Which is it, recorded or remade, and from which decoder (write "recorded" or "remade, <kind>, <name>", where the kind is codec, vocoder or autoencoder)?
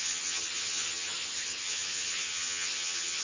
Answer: remade, vocoder, HiFi-GAN